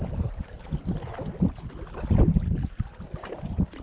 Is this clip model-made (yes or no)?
no